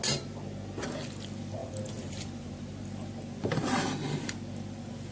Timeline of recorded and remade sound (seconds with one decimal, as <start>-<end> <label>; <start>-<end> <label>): 0.0-5.1 recorded